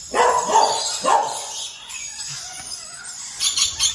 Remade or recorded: remade